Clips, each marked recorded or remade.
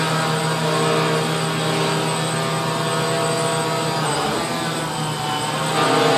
recorded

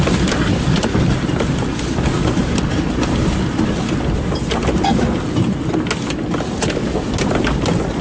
recorded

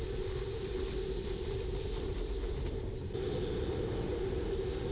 recorded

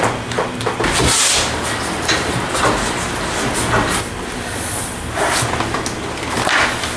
recorded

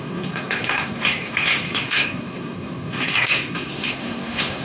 remade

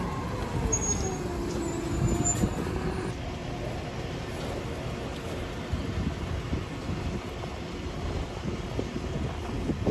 recorded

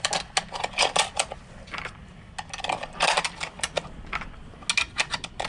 recorded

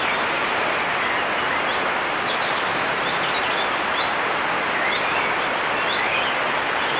recorded